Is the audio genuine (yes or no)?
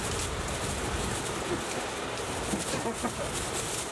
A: yes